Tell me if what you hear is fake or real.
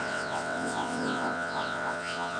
fake